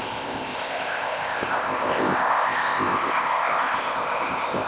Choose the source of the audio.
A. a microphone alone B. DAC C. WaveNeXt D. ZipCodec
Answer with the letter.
D